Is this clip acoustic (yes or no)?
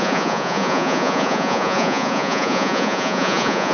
no